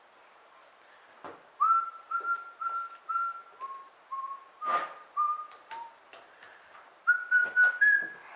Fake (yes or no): no